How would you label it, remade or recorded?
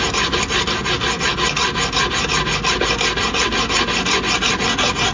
recorded